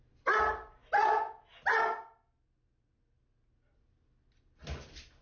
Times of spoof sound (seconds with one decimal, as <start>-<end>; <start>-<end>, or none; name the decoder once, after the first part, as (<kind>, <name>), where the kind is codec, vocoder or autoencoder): none